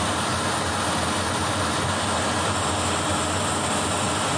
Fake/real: real